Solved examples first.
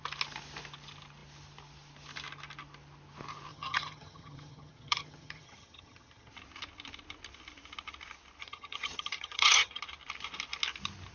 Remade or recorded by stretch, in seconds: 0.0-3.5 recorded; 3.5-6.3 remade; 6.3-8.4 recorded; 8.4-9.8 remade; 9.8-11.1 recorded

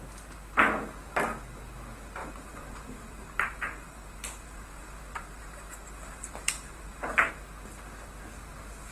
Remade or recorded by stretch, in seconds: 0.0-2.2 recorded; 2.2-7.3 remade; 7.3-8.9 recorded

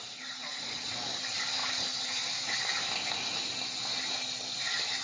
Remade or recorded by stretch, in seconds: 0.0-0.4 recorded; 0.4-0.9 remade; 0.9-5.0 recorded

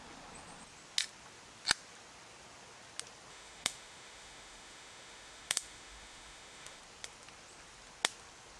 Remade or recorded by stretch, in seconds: 0.0-3.3 recorded; 3.3-6.8 remade; 6.8-8.6 recorded

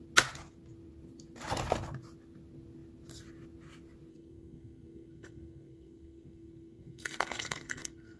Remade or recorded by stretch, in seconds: 0.0-4.1 recorded; 4.1-8.2 remade

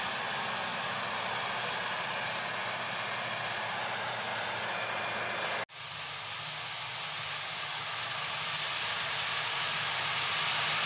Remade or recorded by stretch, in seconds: 0.0-10.9 recorded